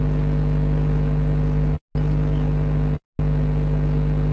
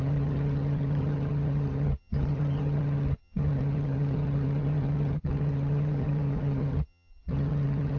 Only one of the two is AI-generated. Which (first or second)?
second